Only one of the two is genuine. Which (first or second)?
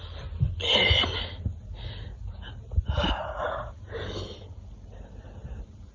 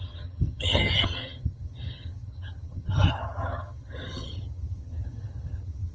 first